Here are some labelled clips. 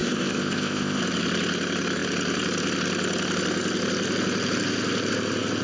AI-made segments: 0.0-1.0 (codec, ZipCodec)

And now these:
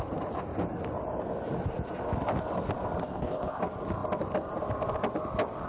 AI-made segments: 3.0-3.6 (codec, ZipCodec)

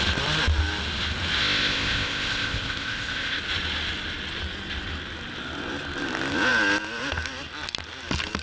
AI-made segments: 1.4-3.4 (codec, ZipCodec)

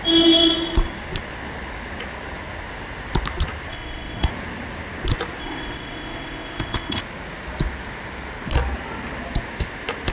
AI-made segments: 3.7-4.3 (codec, ZipCodec); 5.4-7.0

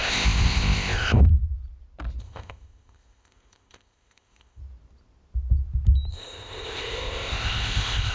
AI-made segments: 0.0-1.2 (codec, ZipCodec); 2.2-4.6; 6.1-8.1

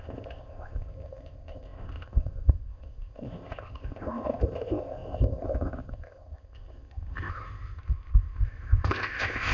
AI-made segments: 0.0-9.5 (codec, ZipCodec)